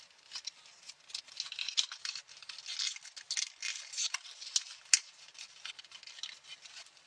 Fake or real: real